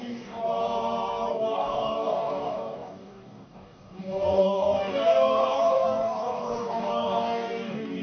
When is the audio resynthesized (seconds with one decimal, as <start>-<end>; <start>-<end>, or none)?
0.0-0.4; 1.3-8.0